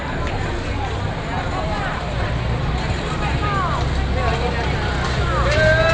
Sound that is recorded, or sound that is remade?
recorded